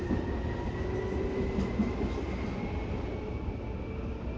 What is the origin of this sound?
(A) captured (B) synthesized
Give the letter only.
A